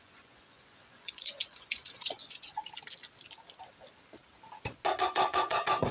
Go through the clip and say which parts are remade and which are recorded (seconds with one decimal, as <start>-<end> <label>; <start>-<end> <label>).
0.0-2.6 remade; 2.6-5.0 recorded; 5.0-5.9 remade